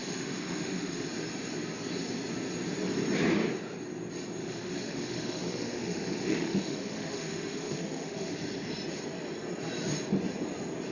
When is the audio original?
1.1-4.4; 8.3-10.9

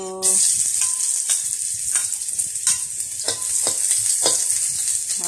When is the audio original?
0.0-5.3

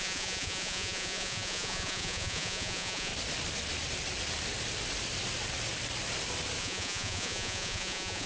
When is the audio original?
3.1-6.6

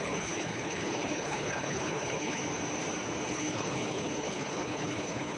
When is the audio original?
2.4-3.3

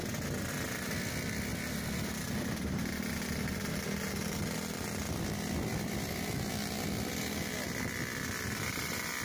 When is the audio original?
0.0-9.2

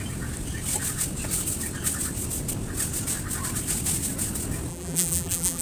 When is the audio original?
0.0-4.7